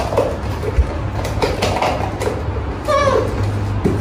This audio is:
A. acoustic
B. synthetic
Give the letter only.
A